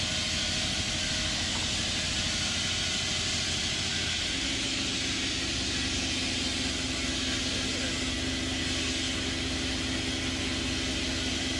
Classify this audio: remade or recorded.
recorded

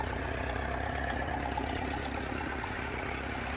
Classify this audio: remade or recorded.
remade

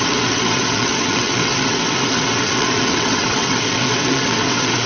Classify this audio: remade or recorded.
remade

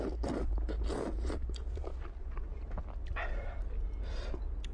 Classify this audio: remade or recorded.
recorded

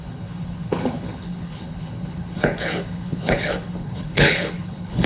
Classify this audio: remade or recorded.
remade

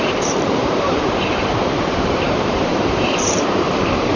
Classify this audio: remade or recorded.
remade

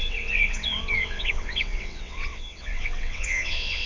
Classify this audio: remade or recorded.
remade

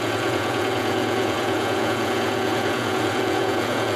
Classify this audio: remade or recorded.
remade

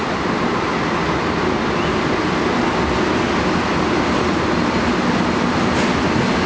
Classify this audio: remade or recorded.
recorded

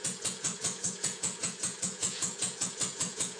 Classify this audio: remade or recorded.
remade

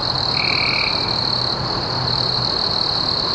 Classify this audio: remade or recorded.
recorded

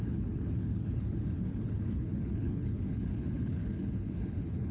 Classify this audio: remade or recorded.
remade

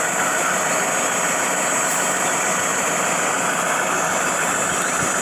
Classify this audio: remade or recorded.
recorded